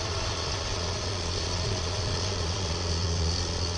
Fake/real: fake